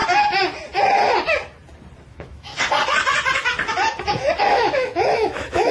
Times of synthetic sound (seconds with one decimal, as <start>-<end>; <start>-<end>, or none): 2.1-2.5; 4.4-5.7